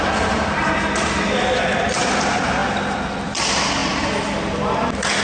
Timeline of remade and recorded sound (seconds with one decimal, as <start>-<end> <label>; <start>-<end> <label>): 0.0-5.2 recorded